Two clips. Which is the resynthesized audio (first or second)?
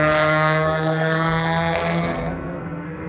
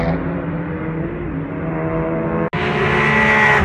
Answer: first